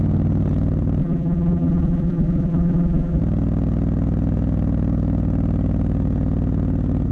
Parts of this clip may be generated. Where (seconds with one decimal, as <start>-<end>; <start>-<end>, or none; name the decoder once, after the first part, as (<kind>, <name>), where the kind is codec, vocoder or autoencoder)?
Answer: 1.0-3.2 (vocoder, BigVGAN v2)